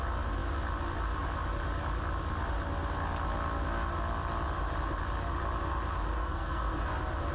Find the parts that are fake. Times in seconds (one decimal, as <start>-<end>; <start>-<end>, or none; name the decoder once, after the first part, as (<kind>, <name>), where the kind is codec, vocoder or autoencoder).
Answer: 6.1-6.8 (codec, SNAC)